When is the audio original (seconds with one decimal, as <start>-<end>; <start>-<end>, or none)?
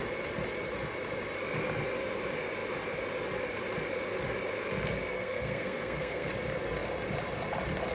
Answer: 0.0-5.1; 6.3-7.9